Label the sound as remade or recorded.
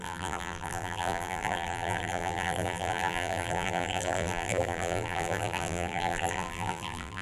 remade